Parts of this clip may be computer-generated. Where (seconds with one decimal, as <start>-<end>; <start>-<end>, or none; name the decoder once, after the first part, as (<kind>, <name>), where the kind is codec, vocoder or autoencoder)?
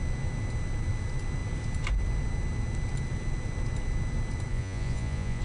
4.5-5.4 (vocoder, Vocos)